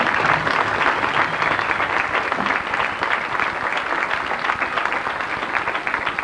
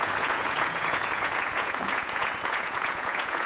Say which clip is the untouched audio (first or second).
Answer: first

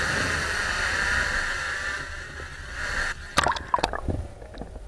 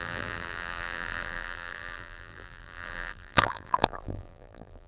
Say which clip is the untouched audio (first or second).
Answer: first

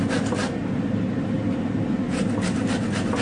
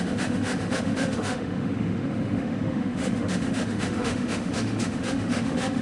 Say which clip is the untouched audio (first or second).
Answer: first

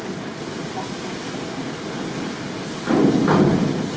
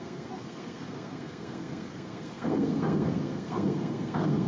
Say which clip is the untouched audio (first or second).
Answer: first